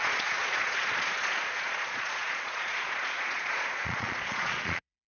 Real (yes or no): no